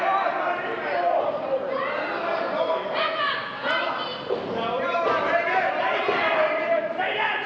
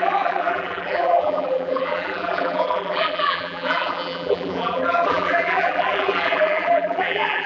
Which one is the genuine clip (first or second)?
first